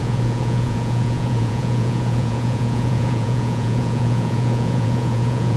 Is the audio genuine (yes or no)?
no